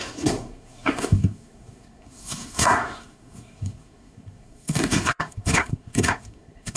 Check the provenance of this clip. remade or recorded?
remade